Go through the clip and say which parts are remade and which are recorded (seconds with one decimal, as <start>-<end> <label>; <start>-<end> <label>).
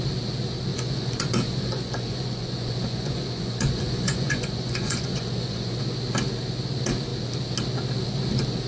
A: 0.0-0.7 recorded; 0.7-5.8 remade; 5.8-8.7 recorded